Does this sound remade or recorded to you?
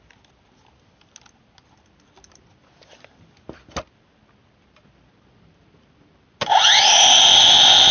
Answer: recorded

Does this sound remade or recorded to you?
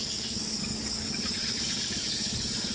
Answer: remade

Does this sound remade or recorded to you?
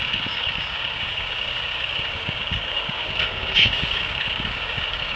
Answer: remade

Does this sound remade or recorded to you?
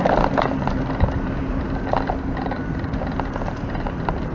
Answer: recorded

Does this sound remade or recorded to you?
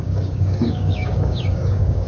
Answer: remade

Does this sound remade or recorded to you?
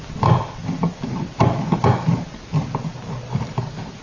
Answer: recorded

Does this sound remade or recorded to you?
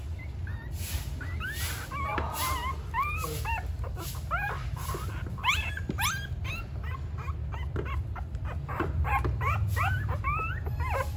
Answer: recorded